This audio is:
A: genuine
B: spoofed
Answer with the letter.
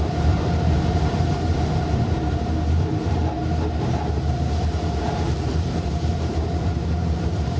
B